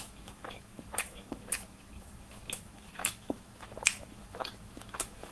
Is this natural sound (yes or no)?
no